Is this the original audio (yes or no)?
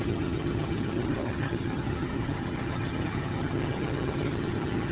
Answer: no